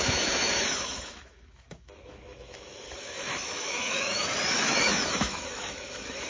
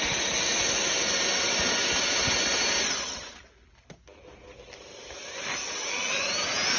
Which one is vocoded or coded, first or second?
first